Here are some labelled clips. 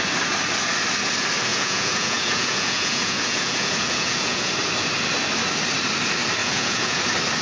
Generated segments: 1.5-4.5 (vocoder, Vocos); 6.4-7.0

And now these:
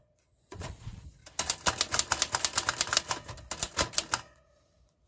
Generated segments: 0.0-1.2 (vocoder, Vocos); 4.3-5.1